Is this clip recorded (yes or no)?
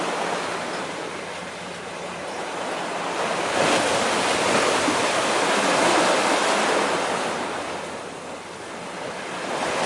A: yes